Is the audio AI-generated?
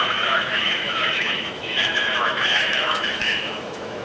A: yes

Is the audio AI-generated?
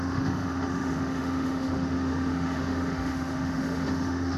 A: yes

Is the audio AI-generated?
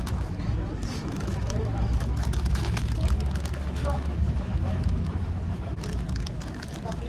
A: yes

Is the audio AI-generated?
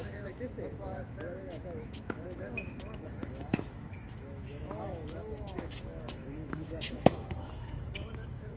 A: yes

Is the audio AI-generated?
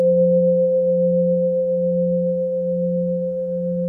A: no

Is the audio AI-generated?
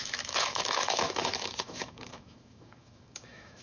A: yes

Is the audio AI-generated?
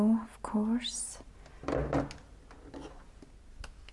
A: no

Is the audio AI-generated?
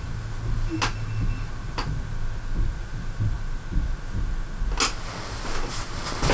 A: no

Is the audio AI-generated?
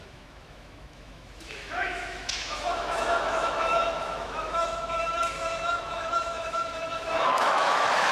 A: yes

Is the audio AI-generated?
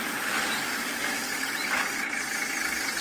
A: no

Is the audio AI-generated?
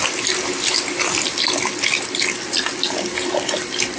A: no